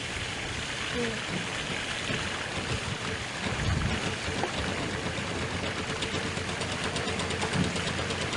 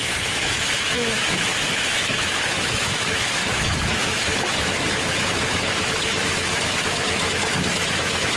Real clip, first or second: first